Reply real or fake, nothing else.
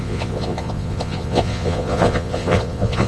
fake